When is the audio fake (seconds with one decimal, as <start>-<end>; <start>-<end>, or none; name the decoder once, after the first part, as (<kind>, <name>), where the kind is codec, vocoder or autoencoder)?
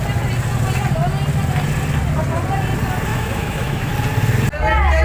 3.1-3.9 (autoencoder, DAC-VAE)